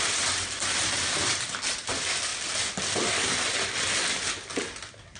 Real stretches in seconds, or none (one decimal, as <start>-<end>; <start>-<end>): 0.0-5.2